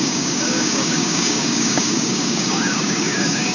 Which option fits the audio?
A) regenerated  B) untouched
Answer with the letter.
A